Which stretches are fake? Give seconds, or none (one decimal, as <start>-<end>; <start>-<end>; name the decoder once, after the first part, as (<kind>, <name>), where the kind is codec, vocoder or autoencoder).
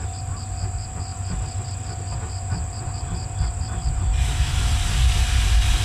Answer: none